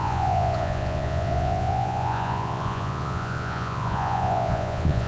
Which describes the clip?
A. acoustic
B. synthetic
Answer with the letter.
B